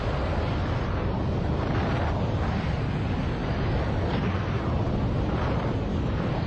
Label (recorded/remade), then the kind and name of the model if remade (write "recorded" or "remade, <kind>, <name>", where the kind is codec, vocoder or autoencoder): recorded